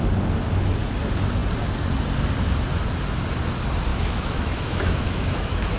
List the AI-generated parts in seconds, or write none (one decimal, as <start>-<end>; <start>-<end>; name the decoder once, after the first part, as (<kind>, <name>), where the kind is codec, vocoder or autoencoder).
3.9-5.8 (autoencoder, DAC-VAE)